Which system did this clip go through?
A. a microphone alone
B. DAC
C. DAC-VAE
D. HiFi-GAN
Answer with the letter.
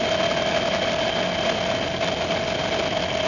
A